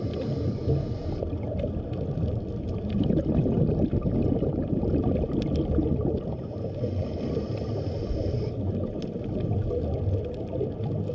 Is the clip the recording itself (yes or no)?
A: yes